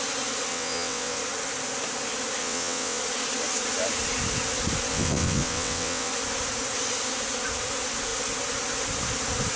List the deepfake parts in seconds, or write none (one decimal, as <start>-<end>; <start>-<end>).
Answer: 0.5-1.2; 2.4-3.0; 4.9-6.1